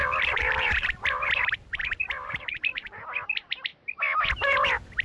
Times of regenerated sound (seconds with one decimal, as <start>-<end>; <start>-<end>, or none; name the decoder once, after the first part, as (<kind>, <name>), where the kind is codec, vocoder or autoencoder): 0.0-3.0 (vocoder, BigVGAN v2)